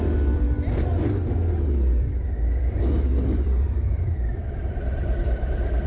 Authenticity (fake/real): fake